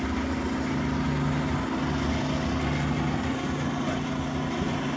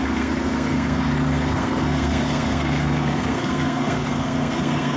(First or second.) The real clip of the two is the first